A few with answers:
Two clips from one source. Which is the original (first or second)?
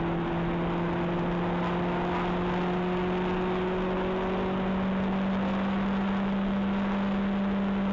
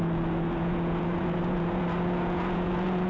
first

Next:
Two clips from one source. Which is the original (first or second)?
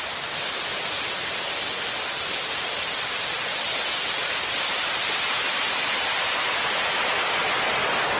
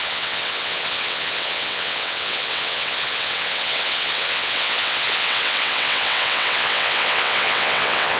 first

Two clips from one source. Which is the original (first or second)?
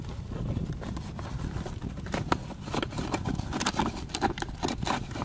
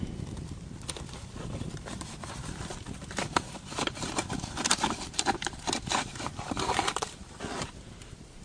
first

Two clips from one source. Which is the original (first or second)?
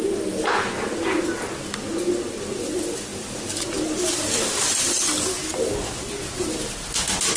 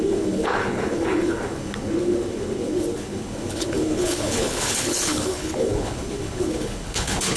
first